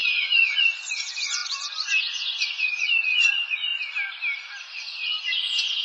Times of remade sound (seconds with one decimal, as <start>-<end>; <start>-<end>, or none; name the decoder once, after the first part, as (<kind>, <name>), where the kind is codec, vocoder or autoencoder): 0.0-3.7 (vocoder, Vocos); 4.6-5.8